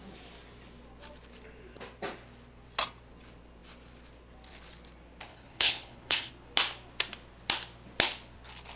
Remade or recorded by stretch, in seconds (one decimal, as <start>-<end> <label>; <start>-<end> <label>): 0.0-5.3 recorded; 5.3-6.3 remade; 6.3-8.8 recorded